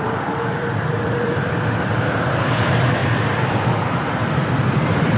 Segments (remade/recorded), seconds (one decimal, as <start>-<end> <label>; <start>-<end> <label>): 0.0-3.0 remade; 3.0-3.5 recorded; 3.5-5.2 remade